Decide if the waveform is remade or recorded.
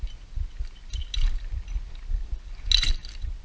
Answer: recorded